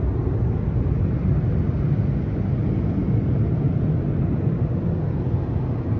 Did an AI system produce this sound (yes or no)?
no